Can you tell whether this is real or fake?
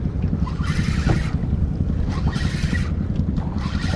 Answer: real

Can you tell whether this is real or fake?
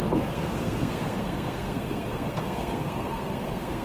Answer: fake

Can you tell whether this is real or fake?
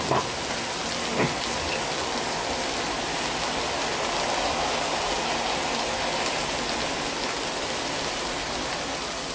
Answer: real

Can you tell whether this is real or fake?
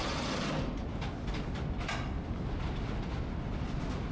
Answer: real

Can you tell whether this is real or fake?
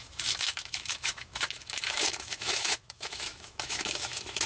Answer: fake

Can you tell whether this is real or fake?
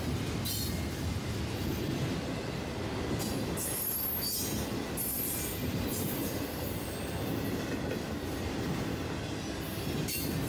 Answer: real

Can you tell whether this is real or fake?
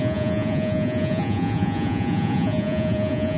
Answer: fake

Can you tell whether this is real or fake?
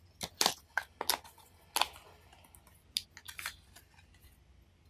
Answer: real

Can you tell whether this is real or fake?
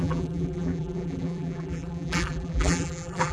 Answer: fake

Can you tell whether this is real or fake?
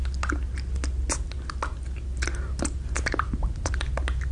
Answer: real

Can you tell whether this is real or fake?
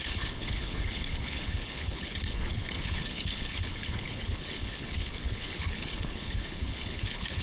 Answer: fake